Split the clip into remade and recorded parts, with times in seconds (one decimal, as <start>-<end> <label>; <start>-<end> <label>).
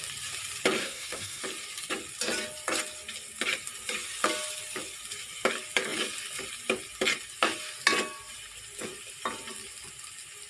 0.0-0.8 recorded; 0.8-1.4 remade; 1.4-10.5 recorded